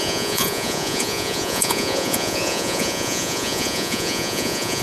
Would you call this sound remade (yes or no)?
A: yes